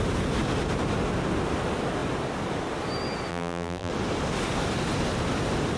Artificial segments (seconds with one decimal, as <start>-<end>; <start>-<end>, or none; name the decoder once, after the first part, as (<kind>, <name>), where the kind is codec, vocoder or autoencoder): 3.3-3.9 (vocoder, BigVGAN v2)